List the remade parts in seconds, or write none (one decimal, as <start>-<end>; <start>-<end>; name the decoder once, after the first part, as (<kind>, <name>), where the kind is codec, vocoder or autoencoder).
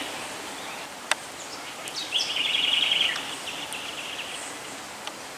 2.0-3.1 (vocoder, BigVGAN v2)